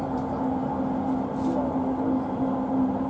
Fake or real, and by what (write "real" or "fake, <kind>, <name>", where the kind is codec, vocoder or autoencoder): real